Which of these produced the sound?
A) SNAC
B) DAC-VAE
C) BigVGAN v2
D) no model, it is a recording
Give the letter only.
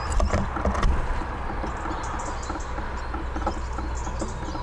D